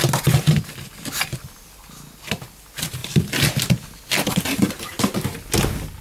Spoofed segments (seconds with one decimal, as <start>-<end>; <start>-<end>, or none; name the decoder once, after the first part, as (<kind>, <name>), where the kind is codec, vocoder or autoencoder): none